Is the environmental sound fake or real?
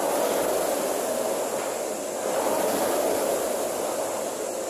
real